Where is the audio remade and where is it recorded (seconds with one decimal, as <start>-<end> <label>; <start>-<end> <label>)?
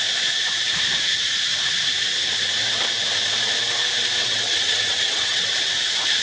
0.0-4.2 recorded; 4.2-5.5 remade; 5.5-6.2 recorded